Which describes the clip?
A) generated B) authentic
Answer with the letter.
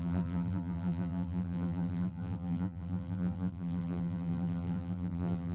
A